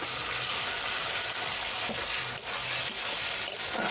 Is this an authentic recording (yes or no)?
yes